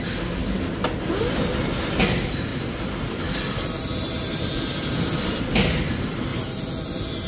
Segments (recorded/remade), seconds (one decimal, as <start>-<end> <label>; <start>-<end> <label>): 0.0-2.5 recorded; 2.5-5.4 remade; 5.4-6.3 recorded; 6.3-7.3 remade